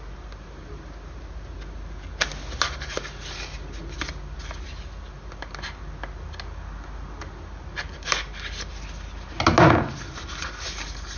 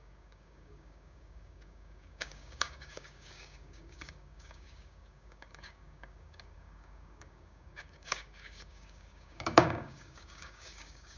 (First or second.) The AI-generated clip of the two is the second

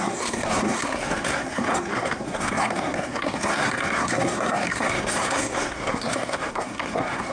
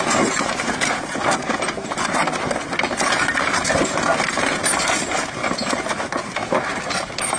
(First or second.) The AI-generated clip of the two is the first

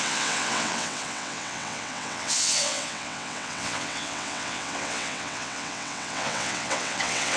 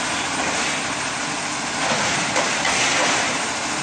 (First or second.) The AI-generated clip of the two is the first